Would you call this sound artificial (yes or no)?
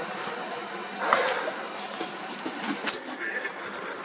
no